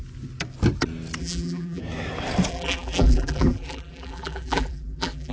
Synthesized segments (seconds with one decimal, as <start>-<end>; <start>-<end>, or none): 1.2-1.8; 2.5-5.3